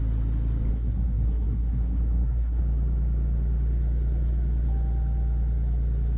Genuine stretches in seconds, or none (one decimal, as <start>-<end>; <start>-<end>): 0.0-0.7; 2.6-6.2